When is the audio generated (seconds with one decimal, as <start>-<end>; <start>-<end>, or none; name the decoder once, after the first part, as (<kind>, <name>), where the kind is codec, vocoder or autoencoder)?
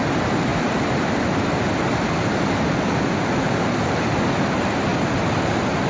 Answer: none